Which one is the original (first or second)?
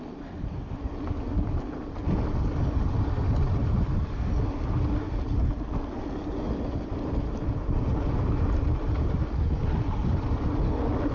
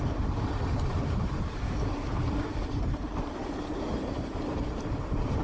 first